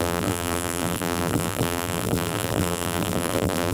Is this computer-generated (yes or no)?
yes